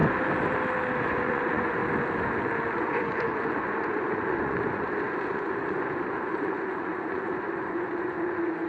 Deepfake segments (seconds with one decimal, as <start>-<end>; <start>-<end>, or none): 1.0-1.8; 2.8-8.7